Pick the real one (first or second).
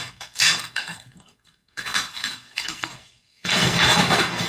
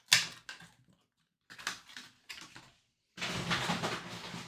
second